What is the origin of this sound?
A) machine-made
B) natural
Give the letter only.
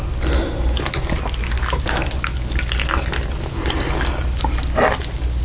B